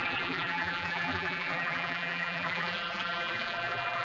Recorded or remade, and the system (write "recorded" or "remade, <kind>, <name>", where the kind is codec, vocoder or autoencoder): remade, vocoder, BigVGAN v2